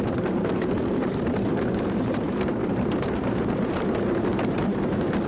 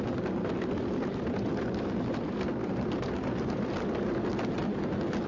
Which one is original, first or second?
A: second